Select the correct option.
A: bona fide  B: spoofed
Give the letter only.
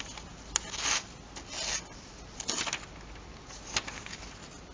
A